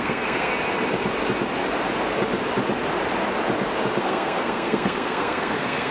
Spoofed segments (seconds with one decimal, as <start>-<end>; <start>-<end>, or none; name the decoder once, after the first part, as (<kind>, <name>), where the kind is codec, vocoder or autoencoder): 0.0-0.5 (codec, SNAC); 4.0-5.9